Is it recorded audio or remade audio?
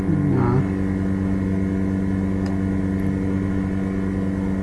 recorded